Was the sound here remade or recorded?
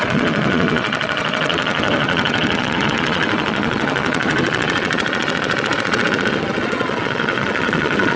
remade